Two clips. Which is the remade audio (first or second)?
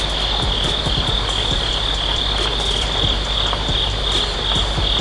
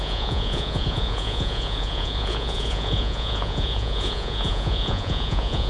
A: second